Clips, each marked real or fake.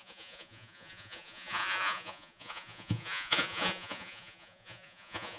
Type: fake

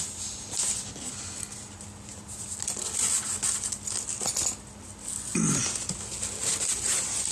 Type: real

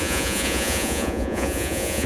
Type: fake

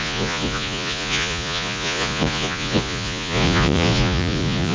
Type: fake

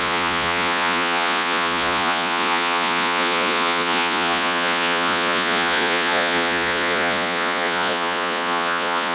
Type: fake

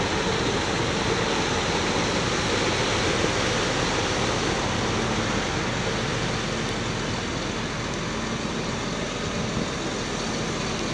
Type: real